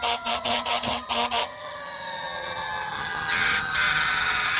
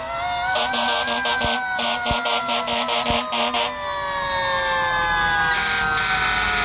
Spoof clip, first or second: first